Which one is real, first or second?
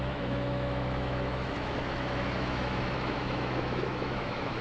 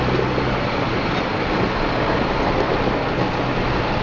second